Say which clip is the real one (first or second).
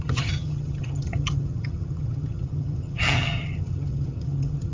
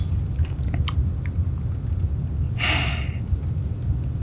second